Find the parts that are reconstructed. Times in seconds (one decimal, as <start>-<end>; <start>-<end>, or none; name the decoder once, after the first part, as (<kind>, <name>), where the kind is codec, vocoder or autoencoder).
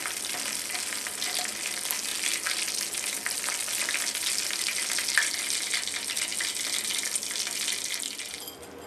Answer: none